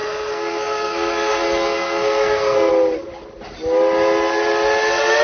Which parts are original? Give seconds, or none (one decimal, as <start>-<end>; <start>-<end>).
2.7-5.2